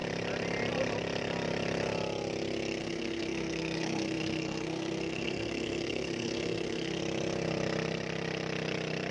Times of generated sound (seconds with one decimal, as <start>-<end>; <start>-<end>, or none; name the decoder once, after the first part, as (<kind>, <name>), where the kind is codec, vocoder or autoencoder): 2.8-7.0 (codec, SNAC)